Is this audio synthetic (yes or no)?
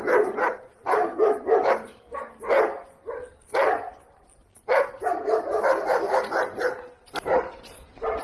no